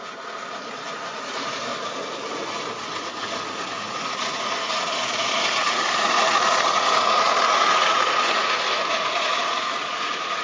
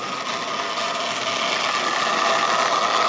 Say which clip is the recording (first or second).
second